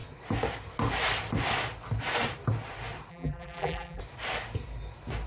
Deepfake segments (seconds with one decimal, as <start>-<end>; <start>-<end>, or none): 3.1-4.0